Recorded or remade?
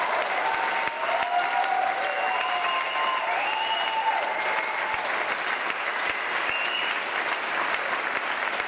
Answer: recorded